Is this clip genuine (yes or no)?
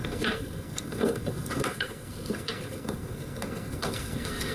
no